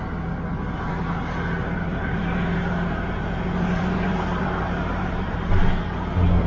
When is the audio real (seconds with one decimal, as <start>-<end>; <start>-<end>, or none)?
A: 0.0-1.9; 5.8-6.5